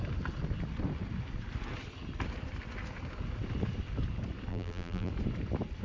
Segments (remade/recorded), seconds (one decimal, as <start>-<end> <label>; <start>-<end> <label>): 0.0-4.5 recorded; 4.5-5.1 remade; 5.1-5.8 recorded